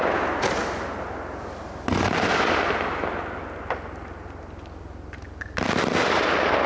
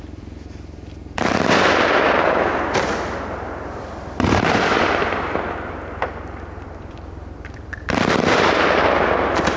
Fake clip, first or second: second